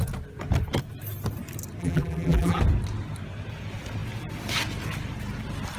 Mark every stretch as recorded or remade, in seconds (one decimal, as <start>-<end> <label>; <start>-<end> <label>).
0.0-1.8 recorded; 1.8-2.6 remade; 2.6-5.8 recorded